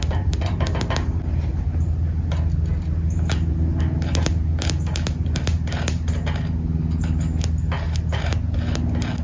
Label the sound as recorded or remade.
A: recorded